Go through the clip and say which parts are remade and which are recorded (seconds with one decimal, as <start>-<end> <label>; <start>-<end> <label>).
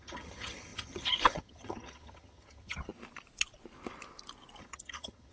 0.0-2.9 remade; 2.9-4.6 recorded; 4.6-5.3 remade